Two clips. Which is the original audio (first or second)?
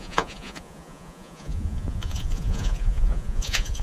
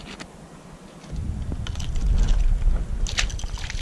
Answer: second